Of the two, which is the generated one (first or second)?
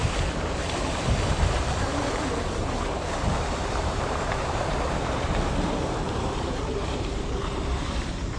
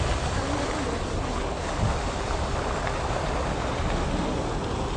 first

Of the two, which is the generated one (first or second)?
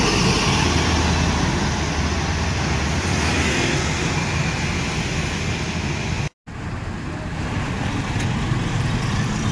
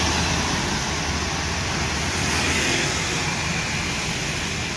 second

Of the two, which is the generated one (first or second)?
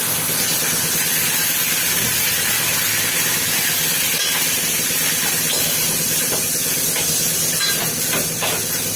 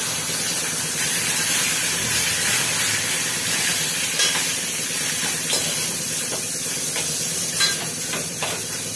second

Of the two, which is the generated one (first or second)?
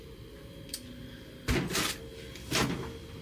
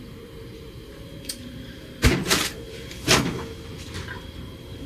second